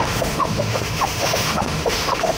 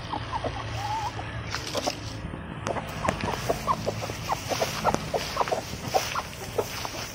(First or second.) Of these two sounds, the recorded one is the second